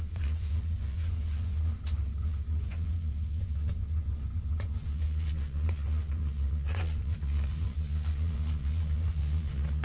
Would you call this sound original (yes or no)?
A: no